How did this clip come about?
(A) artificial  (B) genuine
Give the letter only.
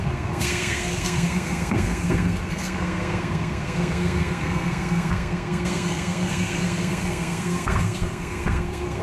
A